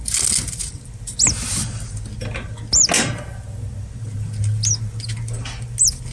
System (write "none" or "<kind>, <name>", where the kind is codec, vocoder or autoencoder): none